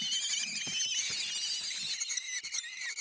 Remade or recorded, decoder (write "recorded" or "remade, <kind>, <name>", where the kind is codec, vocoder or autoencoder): recorded